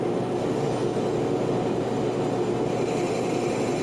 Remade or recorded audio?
recorded